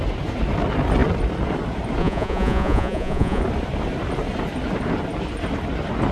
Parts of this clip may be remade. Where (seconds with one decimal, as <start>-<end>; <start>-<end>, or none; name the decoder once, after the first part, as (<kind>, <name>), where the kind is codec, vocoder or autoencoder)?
2.0-3.4 (vocoder, Vocos)